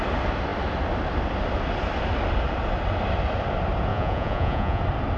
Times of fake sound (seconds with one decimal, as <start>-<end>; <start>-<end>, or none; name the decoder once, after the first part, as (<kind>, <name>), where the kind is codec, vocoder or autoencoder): 3.9-4.8 (vocoder, Vocos)